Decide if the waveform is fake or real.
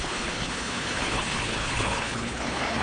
fake